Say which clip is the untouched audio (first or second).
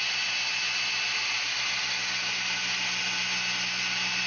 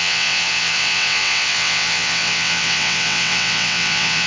first